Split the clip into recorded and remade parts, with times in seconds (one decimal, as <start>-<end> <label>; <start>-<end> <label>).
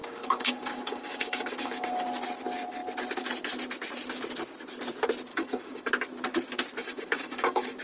0.0-1.9 remade; 1.9-5.3 recorded; 5.3-5.9 remade; 5.9-6.8 recorded; 6.8-7.8 remade